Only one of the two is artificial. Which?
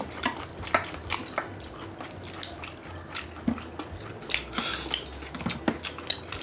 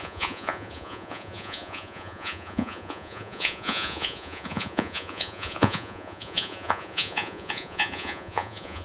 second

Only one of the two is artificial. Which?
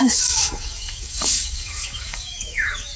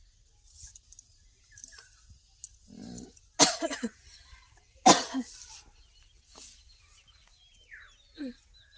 first